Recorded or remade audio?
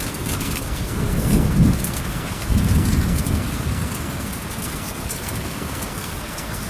remade